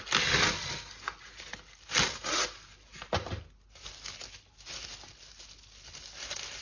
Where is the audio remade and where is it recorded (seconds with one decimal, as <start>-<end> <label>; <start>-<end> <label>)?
0.0-6.6 recorded